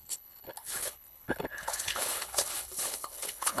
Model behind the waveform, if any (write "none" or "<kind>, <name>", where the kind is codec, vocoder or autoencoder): codec, HILCodec